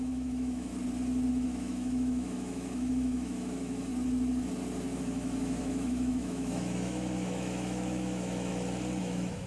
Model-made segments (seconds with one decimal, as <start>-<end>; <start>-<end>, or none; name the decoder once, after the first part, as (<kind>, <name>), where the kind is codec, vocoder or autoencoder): 0.0-0.7 (autoencoder, DAC-VAE); 1.3-3.9; 5.0-8.5; 9.0-9.5